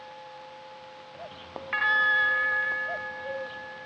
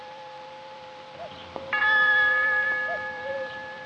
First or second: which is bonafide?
first